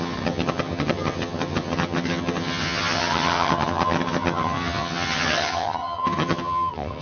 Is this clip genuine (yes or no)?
no